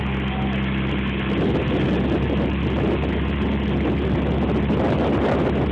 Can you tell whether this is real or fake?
real